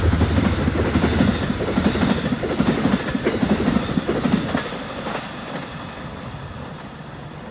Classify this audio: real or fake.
real